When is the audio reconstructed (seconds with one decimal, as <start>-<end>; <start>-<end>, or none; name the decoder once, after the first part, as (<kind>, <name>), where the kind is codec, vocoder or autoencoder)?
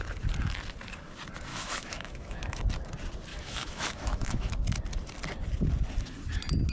1.5-2.6 (autoencoder, DAC-VAE); 3.3-4.5